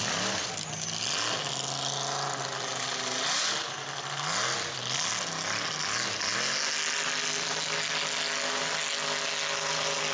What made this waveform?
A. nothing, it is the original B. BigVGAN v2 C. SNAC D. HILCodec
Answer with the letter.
A